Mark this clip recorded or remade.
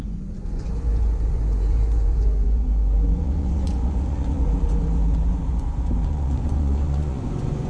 remade